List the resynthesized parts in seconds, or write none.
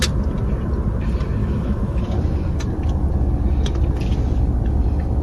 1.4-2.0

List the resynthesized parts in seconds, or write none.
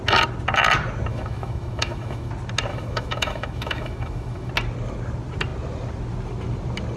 1.1-2.3; 2.7-4.5